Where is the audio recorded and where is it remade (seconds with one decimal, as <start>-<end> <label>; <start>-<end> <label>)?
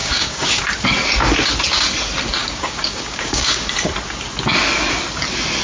0.0-0.6 remade; 0.6-2.4 recorded; 2.4-3.7 remade; 3.7-5.6 recorded